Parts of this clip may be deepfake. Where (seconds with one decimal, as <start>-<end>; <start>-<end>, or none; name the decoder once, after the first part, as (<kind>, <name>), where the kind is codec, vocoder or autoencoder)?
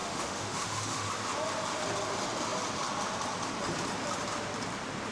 0.0-1.1 (autoencoder, DAC-VAE)